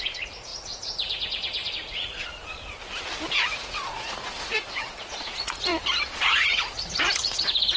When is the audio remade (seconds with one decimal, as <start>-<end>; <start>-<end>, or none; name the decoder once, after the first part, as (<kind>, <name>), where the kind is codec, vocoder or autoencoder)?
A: 0.0-2.4 (vocoder, Vocos); 3.3-5.7; 6.4-7.8

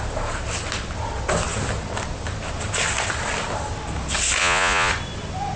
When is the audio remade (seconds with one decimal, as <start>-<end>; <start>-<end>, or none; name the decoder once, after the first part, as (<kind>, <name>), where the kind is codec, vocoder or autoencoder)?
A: 4.4-4.9 (vocoder, Vocos)

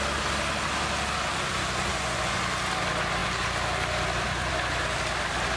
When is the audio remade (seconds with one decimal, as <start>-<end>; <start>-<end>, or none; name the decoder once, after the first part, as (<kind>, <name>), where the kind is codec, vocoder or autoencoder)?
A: 1.9-2.4 (vocoder, Vocos)

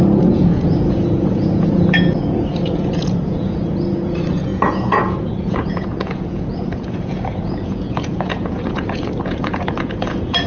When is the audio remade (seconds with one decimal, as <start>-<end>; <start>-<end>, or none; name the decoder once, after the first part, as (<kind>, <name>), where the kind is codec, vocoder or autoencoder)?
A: 0.0-10.5 (vocoder, Vocos)

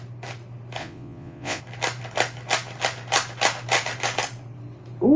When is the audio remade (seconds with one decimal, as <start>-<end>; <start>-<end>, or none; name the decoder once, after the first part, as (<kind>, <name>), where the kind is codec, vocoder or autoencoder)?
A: 0.8-1.6 (vocoder, Vocos)

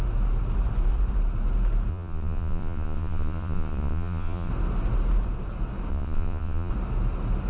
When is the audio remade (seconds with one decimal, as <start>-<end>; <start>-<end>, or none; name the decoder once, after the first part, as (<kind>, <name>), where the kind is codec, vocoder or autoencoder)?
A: 1.9-4.5 (vocoder, Vocos); 5.9-6.7